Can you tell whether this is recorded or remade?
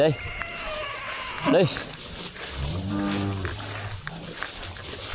recorded